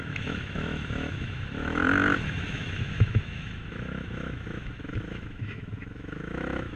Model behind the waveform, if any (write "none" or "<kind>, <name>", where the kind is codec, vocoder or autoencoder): autoencoder, DAC-VAE